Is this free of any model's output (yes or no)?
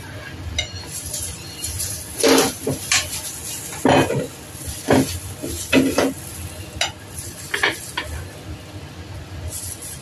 yes